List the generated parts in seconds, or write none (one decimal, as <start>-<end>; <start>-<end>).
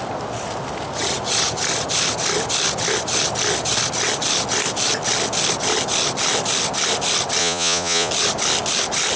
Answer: 7.4-8.1